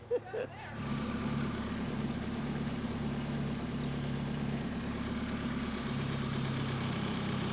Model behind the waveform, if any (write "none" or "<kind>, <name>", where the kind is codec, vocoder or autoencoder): vocoder, BigVGAN v2